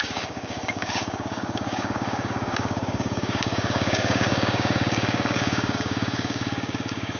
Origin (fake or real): fake